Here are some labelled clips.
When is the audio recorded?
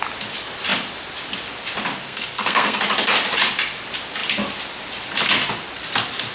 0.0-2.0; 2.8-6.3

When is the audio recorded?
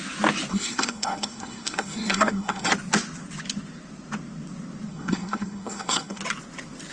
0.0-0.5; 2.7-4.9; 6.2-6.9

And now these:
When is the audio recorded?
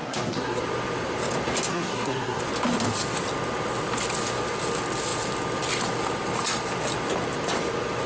0.6-1.7; 2.4-8.1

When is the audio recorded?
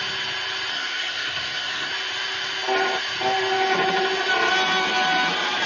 0.0-0.7; 1.9-5.7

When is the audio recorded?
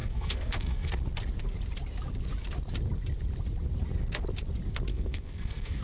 1.0-4.9